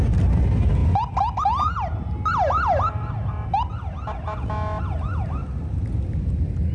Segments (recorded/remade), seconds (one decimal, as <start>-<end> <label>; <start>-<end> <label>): 0.0-6.7 recorded